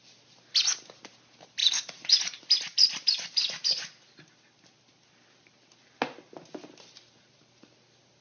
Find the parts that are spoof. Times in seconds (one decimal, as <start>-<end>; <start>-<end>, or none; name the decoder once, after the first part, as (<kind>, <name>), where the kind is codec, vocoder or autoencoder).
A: 1.6-2.1 (vocoder, Vocos)